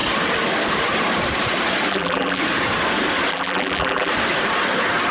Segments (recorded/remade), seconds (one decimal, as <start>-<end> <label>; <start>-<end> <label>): 0.0-1.9 recorded; 1.9-2.4 remade; 2.4-3.3 recorded; 3.3-4.1 remade; 4.1-5.1 recorded